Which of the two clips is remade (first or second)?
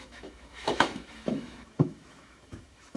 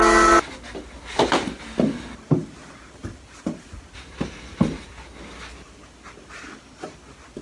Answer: first